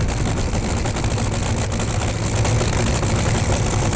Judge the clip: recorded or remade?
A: recorded